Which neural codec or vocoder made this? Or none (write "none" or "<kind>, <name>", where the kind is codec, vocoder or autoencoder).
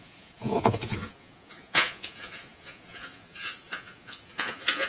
vocoder, Vocos